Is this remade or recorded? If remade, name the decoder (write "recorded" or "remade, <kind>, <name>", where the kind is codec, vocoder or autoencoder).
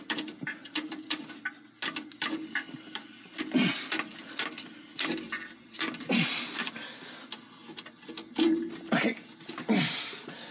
recorded